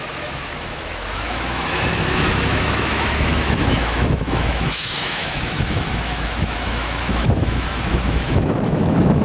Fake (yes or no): yes